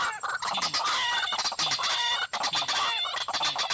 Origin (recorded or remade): recorded